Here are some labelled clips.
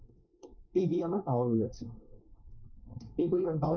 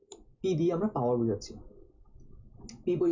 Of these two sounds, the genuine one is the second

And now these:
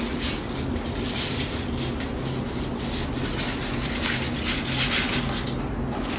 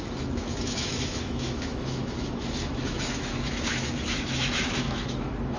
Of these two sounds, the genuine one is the first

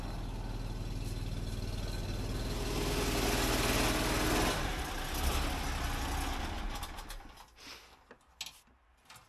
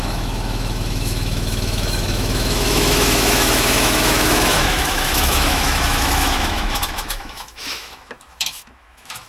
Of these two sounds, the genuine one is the first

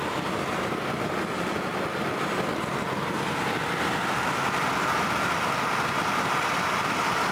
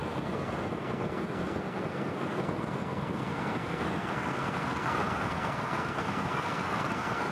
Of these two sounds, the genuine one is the first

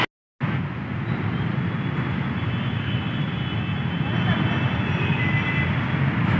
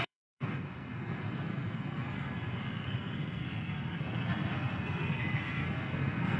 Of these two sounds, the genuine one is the first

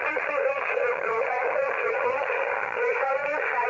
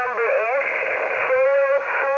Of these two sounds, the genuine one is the second